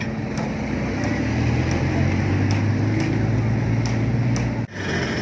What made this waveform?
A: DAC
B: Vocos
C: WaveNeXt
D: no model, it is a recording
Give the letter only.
D